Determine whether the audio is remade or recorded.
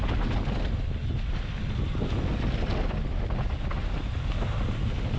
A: recorded